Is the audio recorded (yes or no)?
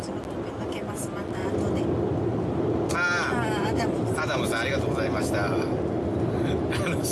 yes